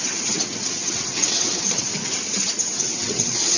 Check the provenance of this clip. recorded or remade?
remade